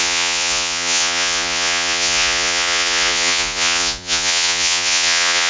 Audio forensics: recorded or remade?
remade